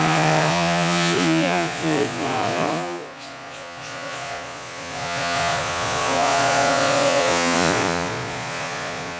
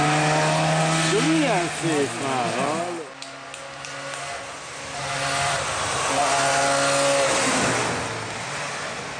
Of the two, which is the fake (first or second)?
first